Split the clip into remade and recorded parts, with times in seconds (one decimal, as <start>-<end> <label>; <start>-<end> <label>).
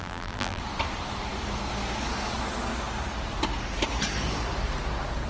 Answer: 0.0-0.6 remade; 0.6-5.3 recorded